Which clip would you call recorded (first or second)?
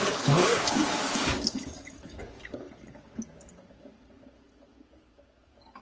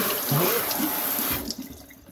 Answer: second